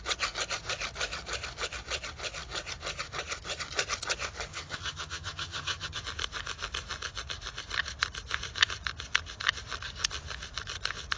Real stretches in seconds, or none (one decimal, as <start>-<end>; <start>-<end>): 0.0-4.5; 6.0-11.2